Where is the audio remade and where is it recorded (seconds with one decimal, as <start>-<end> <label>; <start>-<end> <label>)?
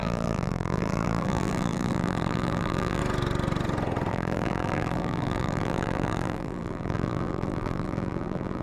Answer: 0.0-3.0 remade; 3.0-4.1 recorded; 4.1-8.6 remade